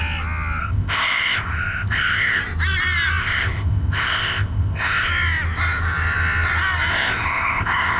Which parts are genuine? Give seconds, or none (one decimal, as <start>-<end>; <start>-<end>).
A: 0.0-0.6; 2.4-3.2; 5.1-6.9